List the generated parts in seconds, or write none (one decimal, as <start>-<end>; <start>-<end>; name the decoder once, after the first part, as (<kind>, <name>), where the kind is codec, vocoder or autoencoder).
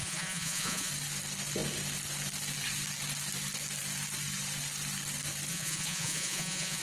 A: 0.0-0.9 (vocoder, Vocos); 5.5-6.8